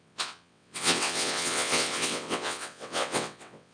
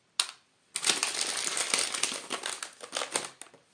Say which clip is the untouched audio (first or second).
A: second